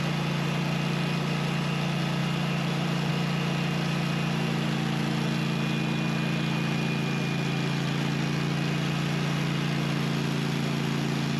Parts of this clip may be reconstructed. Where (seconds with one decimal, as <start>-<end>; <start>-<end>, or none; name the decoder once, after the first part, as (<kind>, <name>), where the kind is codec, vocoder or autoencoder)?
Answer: 2.2-3.1 (vocoder, BigVGAN v2)